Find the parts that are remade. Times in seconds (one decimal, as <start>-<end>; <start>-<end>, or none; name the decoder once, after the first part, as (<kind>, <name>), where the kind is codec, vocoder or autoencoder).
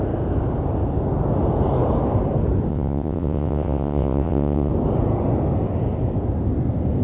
2.7-4.7 (vocoder, WaveNeXt)